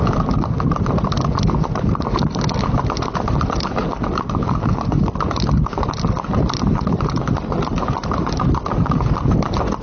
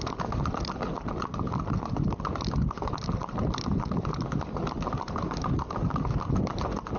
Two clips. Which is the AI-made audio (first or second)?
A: second